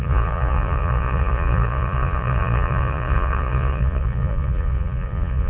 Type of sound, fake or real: fake